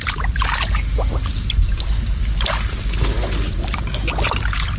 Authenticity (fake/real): real